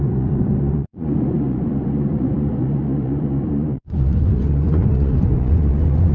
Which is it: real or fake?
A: fake